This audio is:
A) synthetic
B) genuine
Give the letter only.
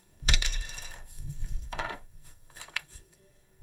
A